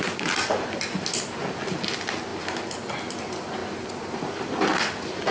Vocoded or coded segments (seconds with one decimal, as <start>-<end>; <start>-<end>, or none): none